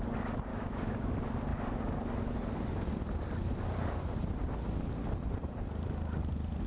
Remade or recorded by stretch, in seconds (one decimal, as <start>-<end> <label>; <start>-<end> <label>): 0.0-0.5 recorded; 0.5-1.1 remade; 1.1-6.7 recorded